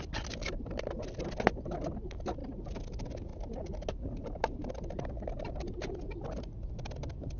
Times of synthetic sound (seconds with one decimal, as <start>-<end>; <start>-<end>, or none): none